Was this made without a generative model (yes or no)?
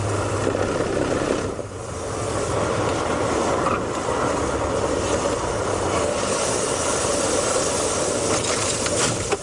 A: yes